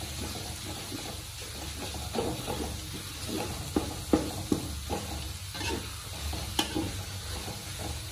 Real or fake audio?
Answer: real